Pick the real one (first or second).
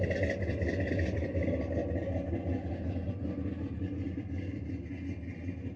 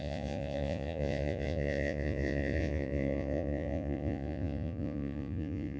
first